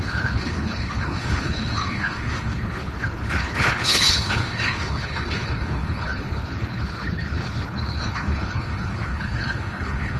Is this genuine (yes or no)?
no